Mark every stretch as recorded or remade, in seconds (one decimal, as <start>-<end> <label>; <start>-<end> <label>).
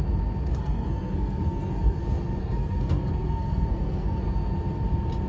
0.0-0.5 recorded; 0.5-2.0 remade; 2.0-2.4 recorded; 2.4-4.2 remade; 4.2-5.3 recorded